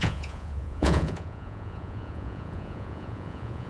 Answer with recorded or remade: remade